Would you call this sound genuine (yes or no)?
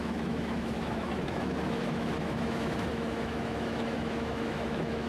no